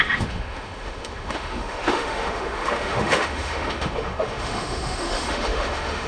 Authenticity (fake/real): fake